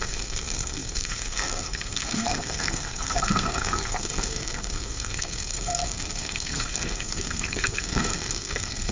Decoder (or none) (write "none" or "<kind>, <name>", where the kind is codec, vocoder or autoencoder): codec, SNAC